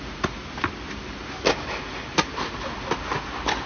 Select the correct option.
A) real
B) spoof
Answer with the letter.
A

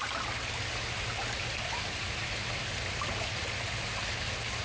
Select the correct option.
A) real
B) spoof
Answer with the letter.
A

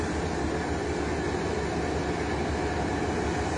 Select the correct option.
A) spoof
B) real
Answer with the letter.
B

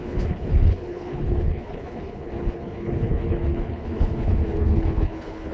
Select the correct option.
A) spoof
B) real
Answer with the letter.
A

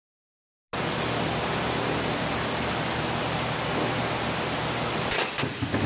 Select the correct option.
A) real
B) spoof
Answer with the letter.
A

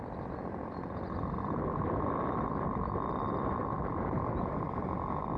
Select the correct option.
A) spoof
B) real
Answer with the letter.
B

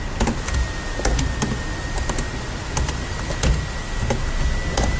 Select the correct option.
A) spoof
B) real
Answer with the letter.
B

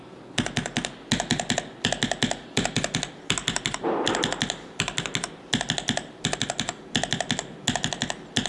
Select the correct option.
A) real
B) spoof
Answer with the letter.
A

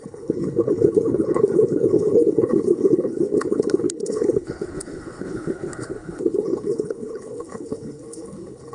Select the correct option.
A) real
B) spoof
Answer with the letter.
B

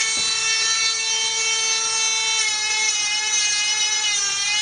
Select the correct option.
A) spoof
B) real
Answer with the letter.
B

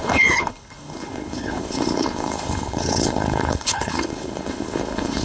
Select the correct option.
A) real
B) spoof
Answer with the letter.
B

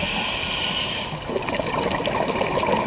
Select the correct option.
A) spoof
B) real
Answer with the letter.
B